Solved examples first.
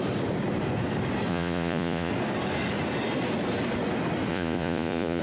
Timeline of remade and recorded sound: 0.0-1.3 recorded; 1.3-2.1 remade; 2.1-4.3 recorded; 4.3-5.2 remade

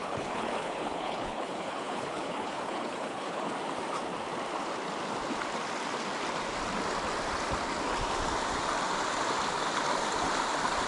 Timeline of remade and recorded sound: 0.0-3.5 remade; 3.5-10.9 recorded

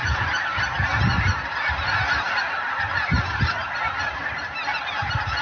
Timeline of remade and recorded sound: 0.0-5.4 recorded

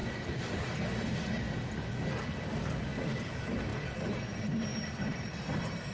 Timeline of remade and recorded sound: 0.0-4.7 recorded; 4.7-5.3 remade; 5.3-5.9 recorded

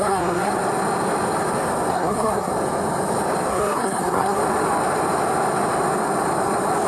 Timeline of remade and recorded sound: 0.0-0.5 remade; 0.5-1.9 recorded; 1.9-2.5 remade; 2.5-3.5 recorded; 3.5-4.4 remade; 4.4-6.9 recorded

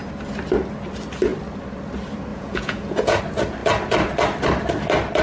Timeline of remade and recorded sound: 0.0-2.3 recorded; 2.3-3.2 remade; 3.2-5.2 recorded